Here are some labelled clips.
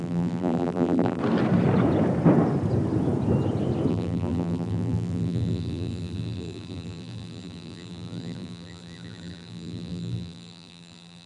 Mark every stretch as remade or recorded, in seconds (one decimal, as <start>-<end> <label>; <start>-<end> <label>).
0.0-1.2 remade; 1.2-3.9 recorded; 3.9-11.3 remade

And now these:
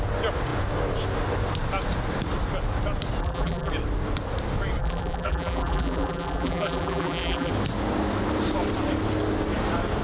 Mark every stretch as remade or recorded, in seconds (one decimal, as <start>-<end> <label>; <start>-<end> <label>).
0.0-3.2 recorded; 3.2-3.7 remade; 3.7-4.8 recorded; 4.8-7.5 remade; 7.5-10.0 recorded

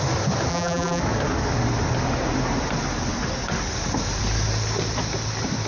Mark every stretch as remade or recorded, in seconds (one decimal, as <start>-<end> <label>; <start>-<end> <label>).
0.0-0.5 recorded; 0.5-1.0 remade; 1.0-5.7 recorded

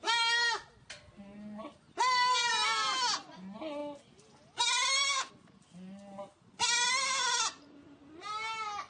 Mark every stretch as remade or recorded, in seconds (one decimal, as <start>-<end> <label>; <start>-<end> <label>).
0.0-8.9 recorded

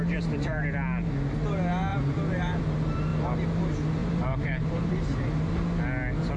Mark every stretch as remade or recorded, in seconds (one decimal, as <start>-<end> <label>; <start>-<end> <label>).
0.0-1.9 recorded; 1.9-2.6 remade; 2.6-4.0 recorded; 4.0-5.2 remade; 5.2-6.4 recorded

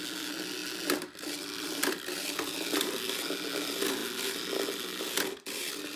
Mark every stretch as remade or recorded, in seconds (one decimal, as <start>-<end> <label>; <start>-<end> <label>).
0.0-6.0 recorded

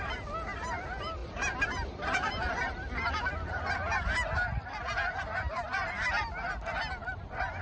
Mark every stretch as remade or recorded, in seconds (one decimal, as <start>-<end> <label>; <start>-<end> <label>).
0.0-1.2 recorded; 1.2-3.1 remade; 3.1-7.0 recorded; 7.0-7.6 remade